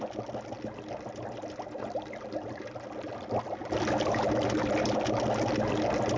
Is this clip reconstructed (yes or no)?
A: no